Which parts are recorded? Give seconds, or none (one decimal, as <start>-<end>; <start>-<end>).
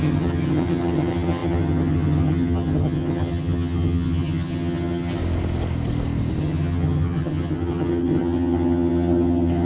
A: 5.2-6.4